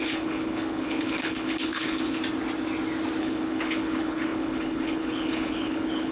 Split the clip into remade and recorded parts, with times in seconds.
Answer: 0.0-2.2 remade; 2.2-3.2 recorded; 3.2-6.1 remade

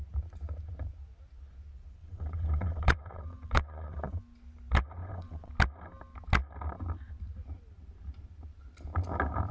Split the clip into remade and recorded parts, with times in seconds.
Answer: 0.0-2.0 recorded; 2.0-4.2 remade; 4.2-5.0 recorded; 5.0-5.5 remade; 5.5-9.5 recorded

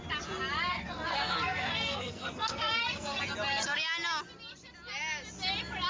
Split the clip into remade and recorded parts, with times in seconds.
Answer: 0.0-0.7 recorded; 0.7-3.2 remade; 3.2-5.9 recorded

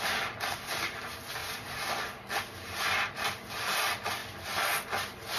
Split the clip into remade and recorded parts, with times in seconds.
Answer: 0.0-5.4 recorded

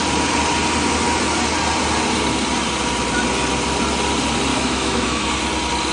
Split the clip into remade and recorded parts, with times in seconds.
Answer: 0.0-4.5 recorded; 4.5-5.3 remade; 5.3-5.9 recorded

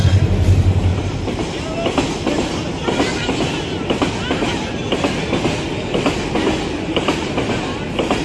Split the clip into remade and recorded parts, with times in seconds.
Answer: 0.0-0.9 recorded; 0.9-1.5 remade; 1.5-8.2 recorded

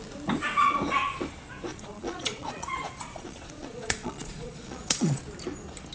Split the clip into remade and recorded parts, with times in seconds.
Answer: 0.0-1.7 recorded; 1.7-5.2 remade; 5.2-5.9 recorded

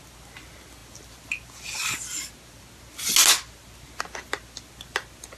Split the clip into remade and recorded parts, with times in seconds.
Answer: 0.0-5.4 recorded